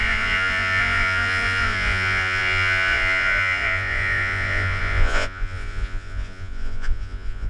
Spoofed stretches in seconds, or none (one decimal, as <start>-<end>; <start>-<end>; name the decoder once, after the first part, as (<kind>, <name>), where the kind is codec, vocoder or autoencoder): 0.0-7.5 (vocoder, Vocos)